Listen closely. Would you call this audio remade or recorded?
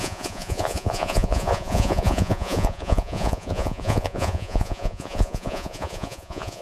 remade